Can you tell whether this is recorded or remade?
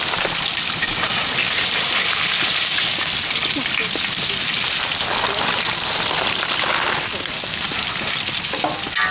recorded